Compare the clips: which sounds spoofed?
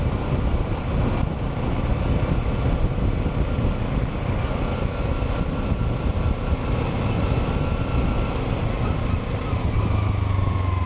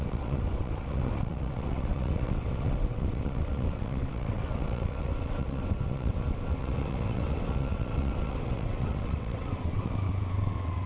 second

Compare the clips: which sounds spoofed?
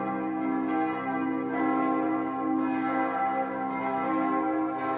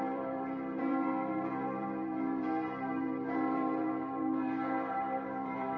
second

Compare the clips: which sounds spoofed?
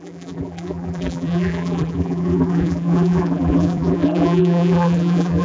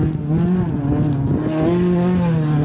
first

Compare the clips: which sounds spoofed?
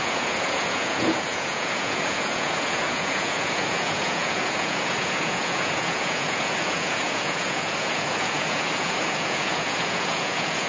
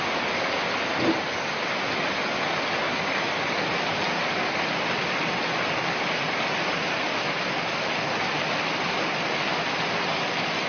first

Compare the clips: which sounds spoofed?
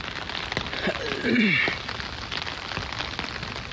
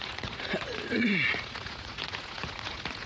second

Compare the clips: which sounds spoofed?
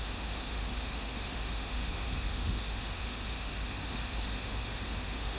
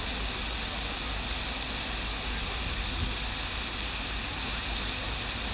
first